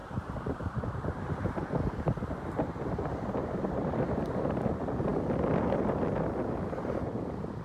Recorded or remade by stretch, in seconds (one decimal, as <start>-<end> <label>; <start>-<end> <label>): 0.0-1.6 remade; 1.6-3.4 recorded; 3.4-4.2 remade; 4.2-7.6 recorded